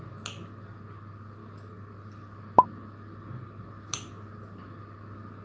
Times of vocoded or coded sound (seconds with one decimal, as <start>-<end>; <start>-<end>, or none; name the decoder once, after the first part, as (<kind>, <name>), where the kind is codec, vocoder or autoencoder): none